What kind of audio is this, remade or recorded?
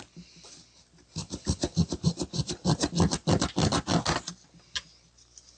recorded